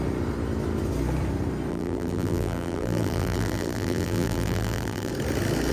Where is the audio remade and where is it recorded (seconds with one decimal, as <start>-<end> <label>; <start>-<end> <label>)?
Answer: 0.0-1.7 recorded; 1.7-5.1 remade; 5.1-5.7 recorded